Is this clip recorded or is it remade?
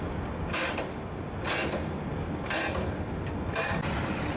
recorded